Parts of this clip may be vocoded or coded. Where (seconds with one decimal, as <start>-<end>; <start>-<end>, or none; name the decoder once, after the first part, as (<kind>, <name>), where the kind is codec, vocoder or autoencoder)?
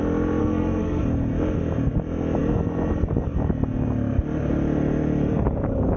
0.4-1.0 (codec, SNAC)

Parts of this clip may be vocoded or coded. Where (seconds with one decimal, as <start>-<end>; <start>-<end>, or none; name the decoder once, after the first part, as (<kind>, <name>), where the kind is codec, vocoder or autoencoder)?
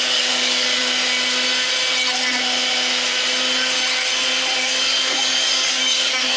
0.0-0.8 (codec, DAC); 4.6-6.4